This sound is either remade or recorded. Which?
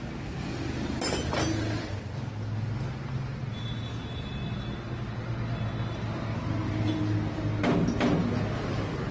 recorded